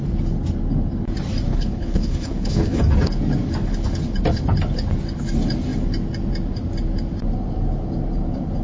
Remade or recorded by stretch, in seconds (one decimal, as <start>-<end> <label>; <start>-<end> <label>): 0.0-1.5 recorded; 1.5-2.8 remade; 2.8-8.6 recorded